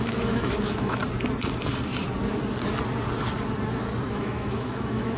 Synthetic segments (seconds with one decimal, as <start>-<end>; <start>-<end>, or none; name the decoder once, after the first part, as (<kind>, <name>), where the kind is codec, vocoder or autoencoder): 0.0-1.0 (autoencoder, DAC-VAE); 4.1-5.2